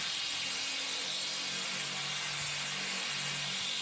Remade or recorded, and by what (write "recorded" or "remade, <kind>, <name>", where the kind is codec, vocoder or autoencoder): recorded